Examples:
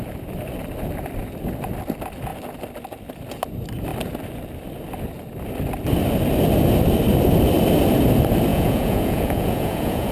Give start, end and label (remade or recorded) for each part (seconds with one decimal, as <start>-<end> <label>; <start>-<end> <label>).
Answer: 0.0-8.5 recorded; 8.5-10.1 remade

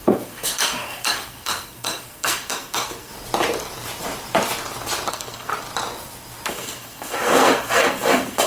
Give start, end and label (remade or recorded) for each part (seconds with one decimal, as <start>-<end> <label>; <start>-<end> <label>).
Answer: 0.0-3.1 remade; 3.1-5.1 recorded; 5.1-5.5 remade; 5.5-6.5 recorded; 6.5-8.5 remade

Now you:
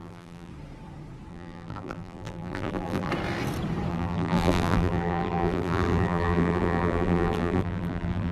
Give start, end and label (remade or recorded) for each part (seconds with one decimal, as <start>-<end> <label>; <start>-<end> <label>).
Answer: 0.0-0.5 remade; 0.5-1.3 recorded; 1.3-3.1 remade; 3.1-3.9 recorded; 3.9-8.3 remade

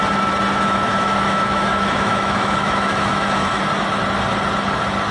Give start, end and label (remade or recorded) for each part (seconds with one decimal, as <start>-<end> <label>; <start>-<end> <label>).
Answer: 0.0-0.5 recorded; 0.5-3.6 remade; 3.6-5.1 recorded

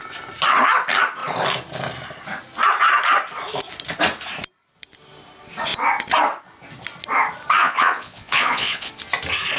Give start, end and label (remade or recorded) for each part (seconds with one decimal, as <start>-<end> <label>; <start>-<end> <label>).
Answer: 0.0-7.6 recorded; 7.6-8.9 remade; 8.9-9.6 recorded